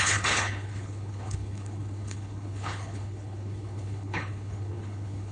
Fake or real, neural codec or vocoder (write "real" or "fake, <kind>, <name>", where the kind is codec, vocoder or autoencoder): fake, codec, HILCodec